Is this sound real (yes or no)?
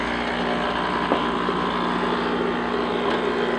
yes